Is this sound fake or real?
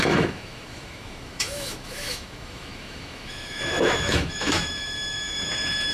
fake